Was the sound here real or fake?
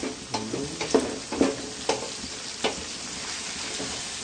real